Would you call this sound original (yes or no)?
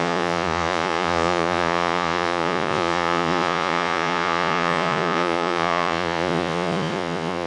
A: no